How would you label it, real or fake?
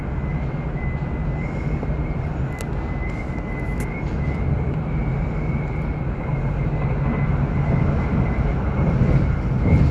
real